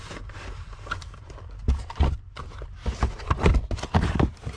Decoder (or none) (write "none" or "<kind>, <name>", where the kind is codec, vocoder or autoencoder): none